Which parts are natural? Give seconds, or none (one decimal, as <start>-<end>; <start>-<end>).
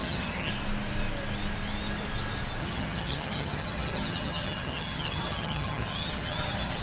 0.5-2.6